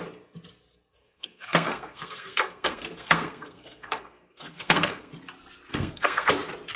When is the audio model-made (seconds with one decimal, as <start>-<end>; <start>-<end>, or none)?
1.0-5.1; 5.7-6.3